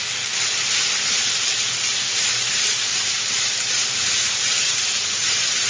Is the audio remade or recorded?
remade